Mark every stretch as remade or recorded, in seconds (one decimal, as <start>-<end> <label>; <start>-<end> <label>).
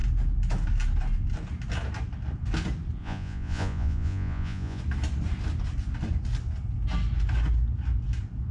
0.0-3.0 recorded; 3.0-4.8 remade; 4.8-8.5 recorded